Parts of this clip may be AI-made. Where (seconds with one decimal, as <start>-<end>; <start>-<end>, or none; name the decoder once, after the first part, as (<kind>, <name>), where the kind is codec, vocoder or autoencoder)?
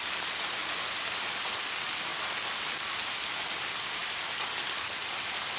none